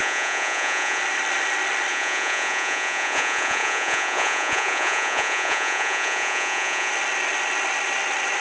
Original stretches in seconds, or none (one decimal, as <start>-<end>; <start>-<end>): 1.0-1.9; 6.9-8.4